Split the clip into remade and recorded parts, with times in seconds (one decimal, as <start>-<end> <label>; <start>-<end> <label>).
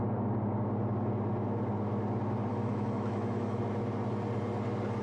0.0-2.5 recorded; 2.5-3.6 remade; 3.6-5.0 recorded